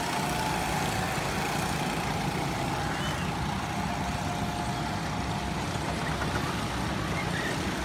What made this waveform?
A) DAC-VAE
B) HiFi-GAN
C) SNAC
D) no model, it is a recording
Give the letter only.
D